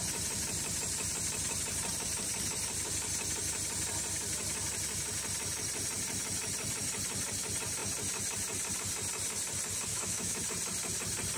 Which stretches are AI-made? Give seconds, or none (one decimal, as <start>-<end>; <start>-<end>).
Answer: 9.9-10.4